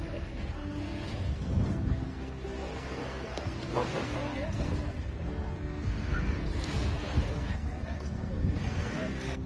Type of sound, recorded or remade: remade